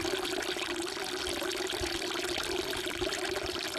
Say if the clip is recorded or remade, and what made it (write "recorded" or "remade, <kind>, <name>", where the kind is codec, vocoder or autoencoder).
recorded